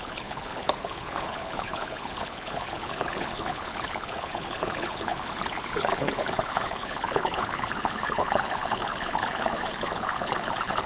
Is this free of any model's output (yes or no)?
no